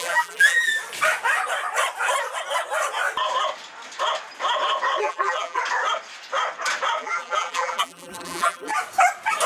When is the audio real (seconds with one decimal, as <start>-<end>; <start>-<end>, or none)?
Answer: 0.7-5.0; 5.6-7.0; 8.7-9.5